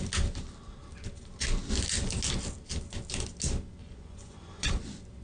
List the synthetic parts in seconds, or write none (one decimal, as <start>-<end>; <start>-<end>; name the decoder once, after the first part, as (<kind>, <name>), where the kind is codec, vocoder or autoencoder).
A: 3.8-4.7 (vocoder, Vocos)